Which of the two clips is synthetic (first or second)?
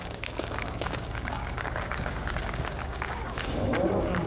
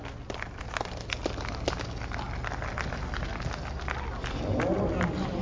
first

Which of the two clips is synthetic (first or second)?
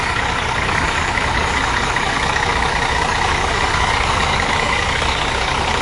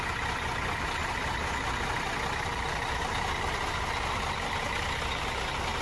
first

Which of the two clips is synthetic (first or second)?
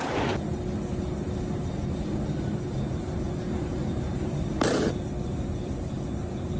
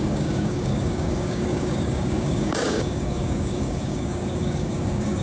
second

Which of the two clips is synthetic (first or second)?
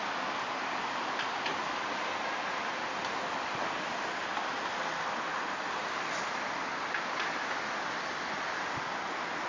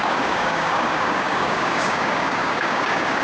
second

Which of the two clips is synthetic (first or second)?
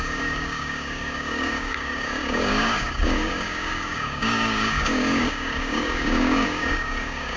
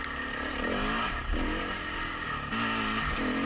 first